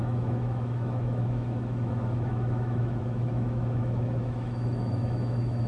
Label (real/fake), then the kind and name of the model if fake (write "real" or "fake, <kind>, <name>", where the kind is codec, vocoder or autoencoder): fake, autoencoder, DAC-VAE